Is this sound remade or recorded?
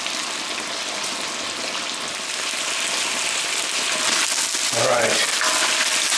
recorded